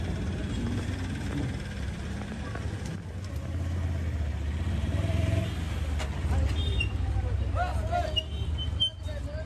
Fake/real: real